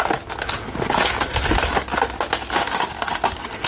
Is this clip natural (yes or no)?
yes